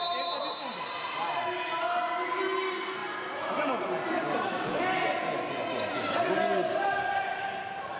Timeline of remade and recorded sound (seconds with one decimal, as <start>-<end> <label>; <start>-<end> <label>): 0.0-8.0 recorded

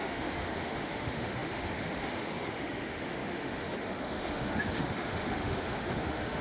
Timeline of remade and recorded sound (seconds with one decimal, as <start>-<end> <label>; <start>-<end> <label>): 0.0-6.4 remade

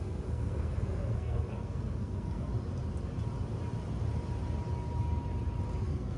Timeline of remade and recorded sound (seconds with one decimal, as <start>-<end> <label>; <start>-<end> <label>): 0.0-2.5 remade; 2.5-5.8 recorded; 5.8-6.2 remade

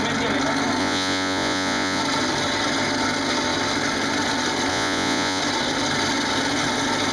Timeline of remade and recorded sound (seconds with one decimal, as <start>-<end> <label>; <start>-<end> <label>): 0.0-0.8 recorded; 0.8-2.0 remade; 2.0-4.7 recorded; 4.7-5.4 remade; 5.4-7.1 recorded